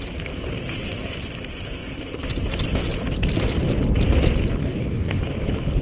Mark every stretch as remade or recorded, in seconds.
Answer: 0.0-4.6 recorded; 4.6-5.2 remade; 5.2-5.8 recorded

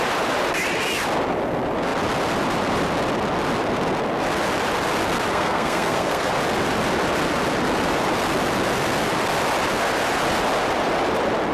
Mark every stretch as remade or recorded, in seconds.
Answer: 0.0-5.3 recorded; 5.3-6.3 remade; 6.3-11.5 recorded

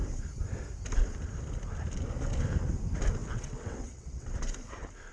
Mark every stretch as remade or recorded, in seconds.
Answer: 0.0-3.2 recorded; 3.2-4.5 remade; 4.5-5.1 recorded